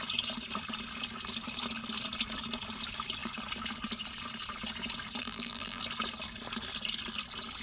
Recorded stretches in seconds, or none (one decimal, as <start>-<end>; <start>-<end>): 0.0-5.2; 5.8-7.6